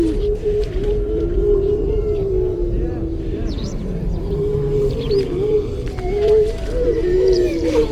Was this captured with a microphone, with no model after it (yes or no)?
no